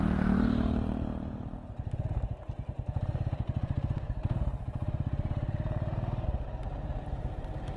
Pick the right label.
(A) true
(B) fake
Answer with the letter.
B